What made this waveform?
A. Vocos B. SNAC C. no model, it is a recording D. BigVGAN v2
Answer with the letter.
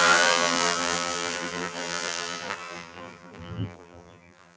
D